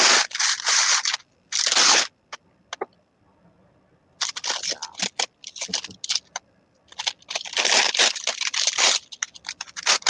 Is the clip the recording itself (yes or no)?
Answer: yes